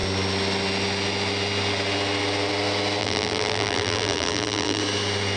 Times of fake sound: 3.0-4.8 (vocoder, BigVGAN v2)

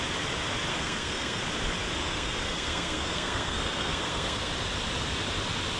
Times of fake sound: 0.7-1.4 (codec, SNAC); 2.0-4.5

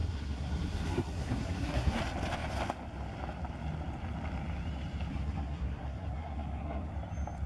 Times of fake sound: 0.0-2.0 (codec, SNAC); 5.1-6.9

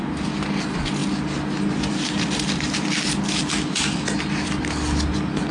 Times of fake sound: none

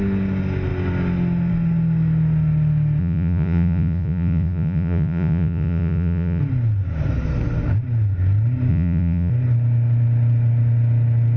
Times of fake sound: 3.0-6.4 (vocoder, Vocos); 8.7-9.3

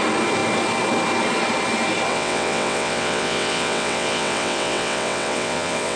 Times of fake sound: 2.1-6.0 (vocoder, WaveNeXt)

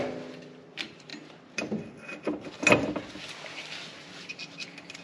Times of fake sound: none